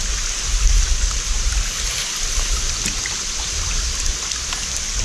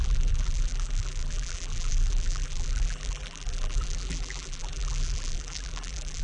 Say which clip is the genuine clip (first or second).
first